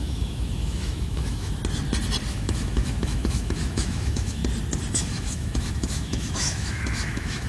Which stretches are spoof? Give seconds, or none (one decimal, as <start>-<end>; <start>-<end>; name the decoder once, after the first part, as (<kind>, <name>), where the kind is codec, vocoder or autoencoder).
0.0-1.6 (autoencoder, DAC-VAE); 2.3-4.4; 4.9-7.5